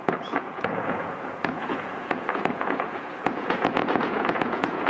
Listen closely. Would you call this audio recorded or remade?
remade